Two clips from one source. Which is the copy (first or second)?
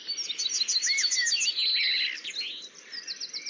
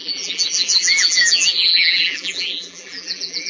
second